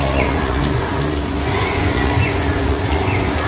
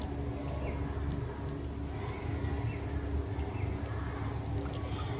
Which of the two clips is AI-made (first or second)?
first